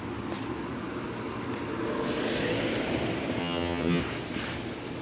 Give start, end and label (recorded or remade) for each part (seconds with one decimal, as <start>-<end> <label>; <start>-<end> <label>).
0.0-3.4 recorded; 3.4-4.0 remade; 4.0-5.0 recorded